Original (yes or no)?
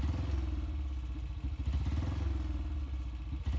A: yes